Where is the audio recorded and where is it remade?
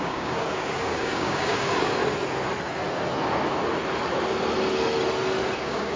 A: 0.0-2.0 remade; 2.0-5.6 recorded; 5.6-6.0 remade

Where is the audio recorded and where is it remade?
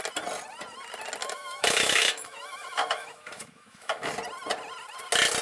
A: 0.0-1.2 recorded; 1.2-4.1 remade; 4.1-5.4 recorded